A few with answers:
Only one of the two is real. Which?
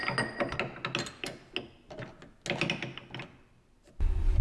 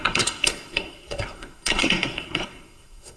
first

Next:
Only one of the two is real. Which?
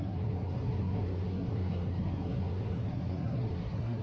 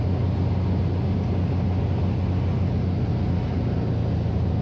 second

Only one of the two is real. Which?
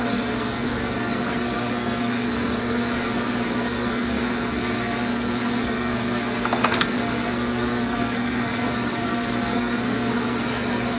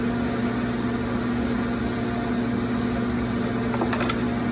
second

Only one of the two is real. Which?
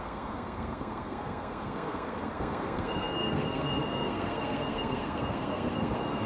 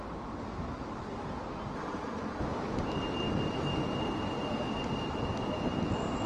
second